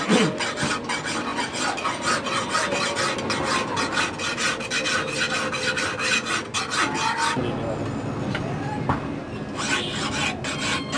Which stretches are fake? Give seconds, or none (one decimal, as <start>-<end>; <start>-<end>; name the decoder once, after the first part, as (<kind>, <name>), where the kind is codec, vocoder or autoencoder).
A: none